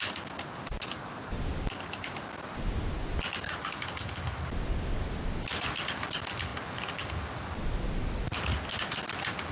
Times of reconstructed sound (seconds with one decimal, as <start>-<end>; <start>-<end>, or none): none